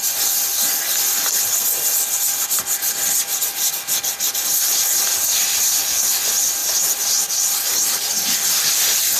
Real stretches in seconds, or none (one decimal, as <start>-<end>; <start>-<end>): 0.0-6.6; 7.3-9.2

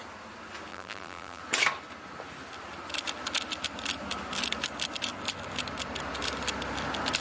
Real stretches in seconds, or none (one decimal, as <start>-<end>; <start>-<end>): 0.0-0.7; 1.4-7.2